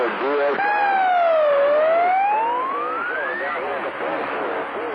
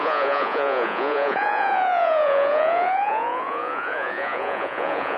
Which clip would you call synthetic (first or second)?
second